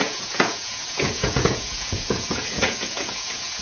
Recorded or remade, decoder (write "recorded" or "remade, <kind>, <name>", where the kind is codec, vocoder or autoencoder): remade, vocoder, Vocos